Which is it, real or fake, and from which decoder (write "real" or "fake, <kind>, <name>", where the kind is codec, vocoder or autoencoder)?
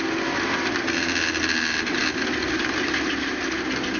real